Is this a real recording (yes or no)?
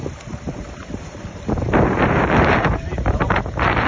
no